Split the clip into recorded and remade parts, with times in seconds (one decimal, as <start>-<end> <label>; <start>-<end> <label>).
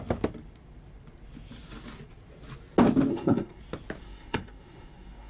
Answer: 0.0-3.1 recorded; 3.1-3.6 remade; 3.6-4.0 recorded; 4.0-5.3 remade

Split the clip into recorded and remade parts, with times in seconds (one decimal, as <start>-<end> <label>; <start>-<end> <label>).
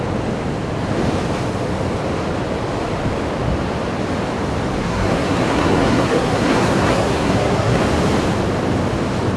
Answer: 0.0-4.8 recorded; 4.8-7.8 remade; 7.8-9.4 recorded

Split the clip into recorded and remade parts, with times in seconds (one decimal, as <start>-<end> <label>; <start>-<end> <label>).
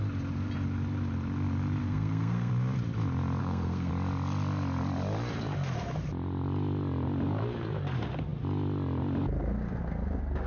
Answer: 0.0-1.8 recorded; 1.8-2.5 remade; 2.5-3.4 recorded; 3.4-3.9 remade; 3.9-10.5 recorded